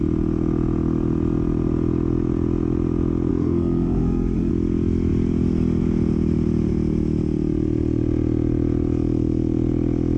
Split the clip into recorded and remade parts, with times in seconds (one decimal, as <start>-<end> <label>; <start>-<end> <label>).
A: 0.0-3.3 recorded; 3.3-4.5 remade; 4.5-10.2 recorded